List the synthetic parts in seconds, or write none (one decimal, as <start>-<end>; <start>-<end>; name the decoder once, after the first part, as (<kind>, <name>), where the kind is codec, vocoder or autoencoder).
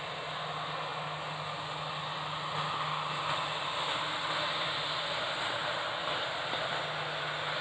none